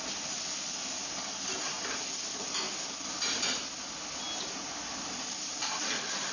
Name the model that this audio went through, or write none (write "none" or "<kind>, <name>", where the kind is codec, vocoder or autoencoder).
none